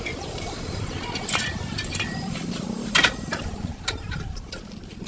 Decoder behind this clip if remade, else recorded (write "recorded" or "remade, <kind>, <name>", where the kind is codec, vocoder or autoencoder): remade, vocoder, BigVGAN v2